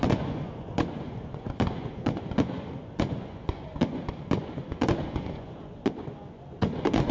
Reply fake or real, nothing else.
fake